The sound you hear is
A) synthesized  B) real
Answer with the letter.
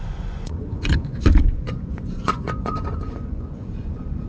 A